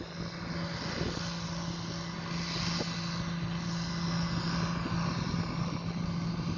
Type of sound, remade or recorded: recorded